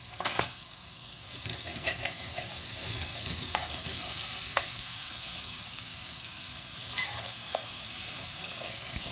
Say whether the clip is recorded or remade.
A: remade